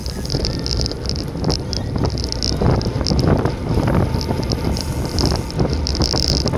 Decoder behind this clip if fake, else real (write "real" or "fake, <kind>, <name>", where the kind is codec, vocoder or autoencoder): real